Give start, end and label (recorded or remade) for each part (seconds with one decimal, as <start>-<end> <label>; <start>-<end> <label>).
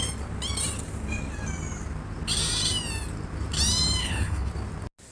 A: 0.0-4.0 recorded; 4.0-4.5 remade; 4.5-5.1 recorded